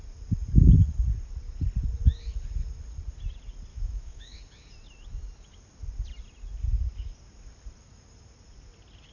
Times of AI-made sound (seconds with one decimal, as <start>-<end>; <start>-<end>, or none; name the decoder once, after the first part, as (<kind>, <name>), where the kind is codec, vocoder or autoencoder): 3.7-4.4 (autoencoder, DAC-VAE)